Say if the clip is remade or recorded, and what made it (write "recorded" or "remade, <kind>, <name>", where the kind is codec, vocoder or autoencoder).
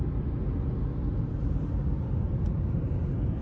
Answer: recorded